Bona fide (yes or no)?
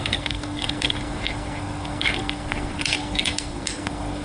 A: no